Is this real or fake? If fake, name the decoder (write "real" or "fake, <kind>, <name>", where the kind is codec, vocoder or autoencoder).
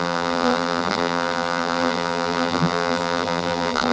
fake, vocoder, BigVGAN v2